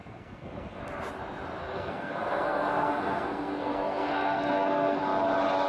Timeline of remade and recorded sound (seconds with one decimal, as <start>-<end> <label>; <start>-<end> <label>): 0.0-0.8 remade; 0.8-1.6 recorded; 1.6-5.0 remade; 5.0-5.7 recorded